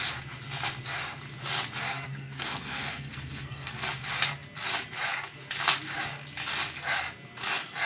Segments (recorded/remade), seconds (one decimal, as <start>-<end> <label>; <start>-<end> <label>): 0.0-1.9 recorded; 1.9-3.9 remade; 3.9-7.9 recorded